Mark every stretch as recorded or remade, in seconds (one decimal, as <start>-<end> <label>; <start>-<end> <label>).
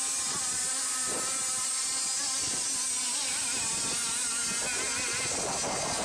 0.0-6.0 recorded